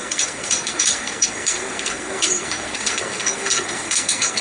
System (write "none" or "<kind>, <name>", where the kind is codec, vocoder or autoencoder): codec, SNAC